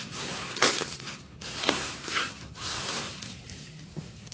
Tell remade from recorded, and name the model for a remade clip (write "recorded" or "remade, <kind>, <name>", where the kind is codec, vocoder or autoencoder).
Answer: remade, codec, SNAC